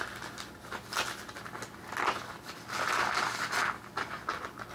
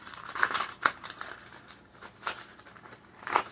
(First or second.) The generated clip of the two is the second